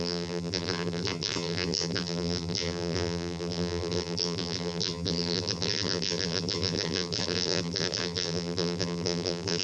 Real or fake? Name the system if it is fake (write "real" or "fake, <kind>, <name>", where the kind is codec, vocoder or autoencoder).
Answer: fake, vocoder, BigVGAN v2